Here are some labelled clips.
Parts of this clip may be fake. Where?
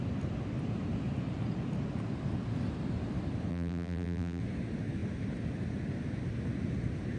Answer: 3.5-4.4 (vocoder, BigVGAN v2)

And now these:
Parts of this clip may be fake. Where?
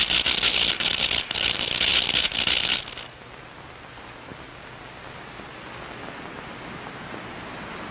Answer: none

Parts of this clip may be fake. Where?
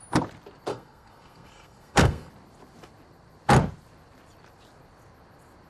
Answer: 0.7-2.3 (codec, SNAC)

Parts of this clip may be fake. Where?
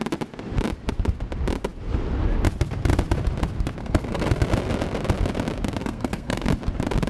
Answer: 3.8-4.3 (codec, SNAC); 5.8-6.5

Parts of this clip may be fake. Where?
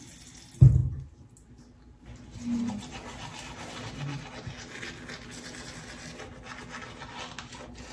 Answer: none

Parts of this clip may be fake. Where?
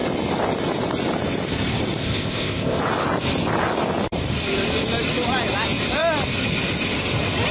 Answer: 2.0-2.8 (codec, ZipCodec)